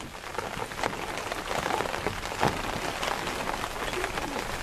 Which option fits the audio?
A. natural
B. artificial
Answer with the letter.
A